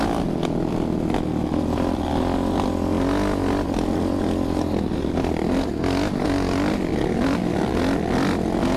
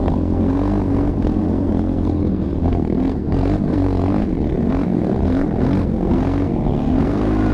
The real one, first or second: first